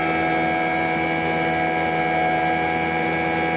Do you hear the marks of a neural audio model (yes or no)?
no